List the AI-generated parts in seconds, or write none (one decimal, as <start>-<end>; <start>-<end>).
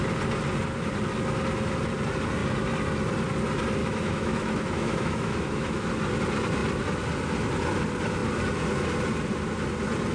3.8-5.9